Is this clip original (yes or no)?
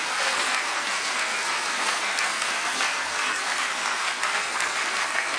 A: no